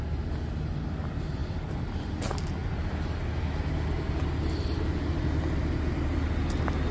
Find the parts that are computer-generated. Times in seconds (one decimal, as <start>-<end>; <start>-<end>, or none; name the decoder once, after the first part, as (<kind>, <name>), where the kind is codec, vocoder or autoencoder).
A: none